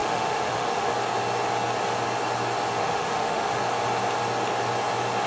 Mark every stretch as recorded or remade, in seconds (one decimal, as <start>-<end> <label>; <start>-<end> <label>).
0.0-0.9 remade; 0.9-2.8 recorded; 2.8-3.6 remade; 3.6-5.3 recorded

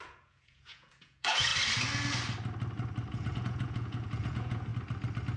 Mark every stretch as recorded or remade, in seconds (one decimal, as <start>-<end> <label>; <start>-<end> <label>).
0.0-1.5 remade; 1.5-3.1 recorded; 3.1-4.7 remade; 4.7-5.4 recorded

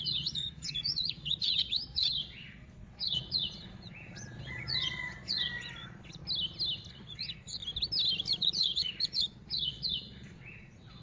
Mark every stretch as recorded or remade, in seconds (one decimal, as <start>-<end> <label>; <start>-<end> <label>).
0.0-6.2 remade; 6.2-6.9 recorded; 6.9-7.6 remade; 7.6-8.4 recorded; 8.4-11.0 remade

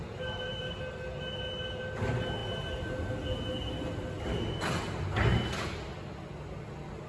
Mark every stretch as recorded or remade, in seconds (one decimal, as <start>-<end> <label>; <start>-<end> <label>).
0.0-0.8 remade; 0.8-7.1 recorded

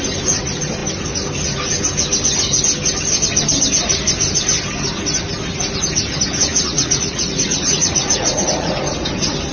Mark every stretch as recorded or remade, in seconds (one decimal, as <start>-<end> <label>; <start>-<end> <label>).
0.0-6.5 recorded; 6.5-8.8 remade; 8.8-9.5 recorded